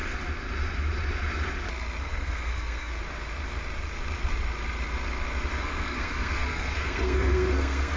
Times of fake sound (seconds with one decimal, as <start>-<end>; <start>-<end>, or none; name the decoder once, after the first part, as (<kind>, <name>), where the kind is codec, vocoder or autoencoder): 2.0-2.9 (codec, SNAC); 5.6-8.0